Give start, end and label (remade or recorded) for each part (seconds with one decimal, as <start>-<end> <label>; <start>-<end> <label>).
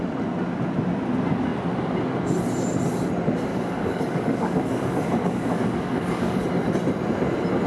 0.0-3.5 recorded; 3.5-6.4 remade; 6.4-7.7 recorded